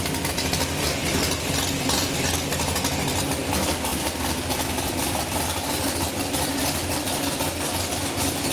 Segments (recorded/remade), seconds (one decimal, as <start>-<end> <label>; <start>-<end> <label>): 0.0-8.5 recorded